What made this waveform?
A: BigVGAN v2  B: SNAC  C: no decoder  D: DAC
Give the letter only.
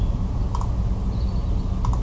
C